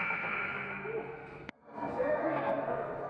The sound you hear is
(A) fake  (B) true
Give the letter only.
A